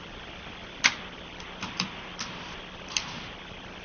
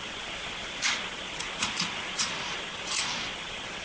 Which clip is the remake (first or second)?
second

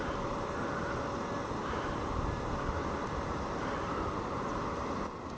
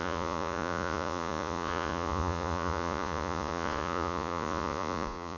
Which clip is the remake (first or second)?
second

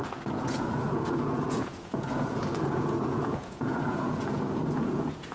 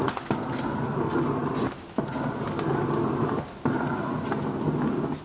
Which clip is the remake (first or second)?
first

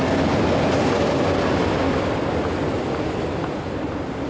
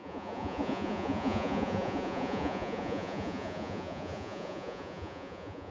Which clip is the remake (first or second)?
second